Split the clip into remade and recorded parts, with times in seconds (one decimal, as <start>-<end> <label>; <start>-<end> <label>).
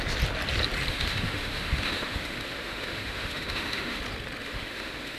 0.0-0.9 recorded; 0.9-4.0 remade; 4.0-4.4 recorded; 4.4-5.2 remade